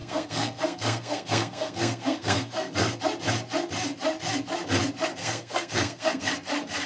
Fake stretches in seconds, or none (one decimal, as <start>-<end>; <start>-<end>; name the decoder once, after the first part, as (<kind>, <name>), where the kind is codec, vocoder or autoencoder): 0.0-3.0 (codec, SNAC); 5.2-6.3